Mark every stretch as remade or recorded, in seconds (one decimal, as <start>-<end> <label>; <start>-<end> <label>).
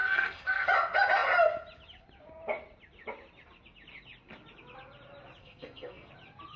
0.0-0.7 remade; 0.7-5.4 recorded; 5.4-6.1 remade; 6.1-6.6 recorded